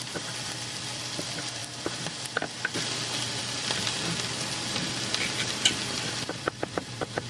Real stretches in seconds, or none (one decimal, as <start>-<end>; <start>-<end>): 0.0-7.3